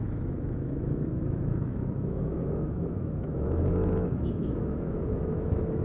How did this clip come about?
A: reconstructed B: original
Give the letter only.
A